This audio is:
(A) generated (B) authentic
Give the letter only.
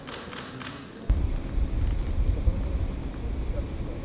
B